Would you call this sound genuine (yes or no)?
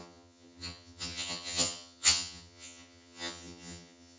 no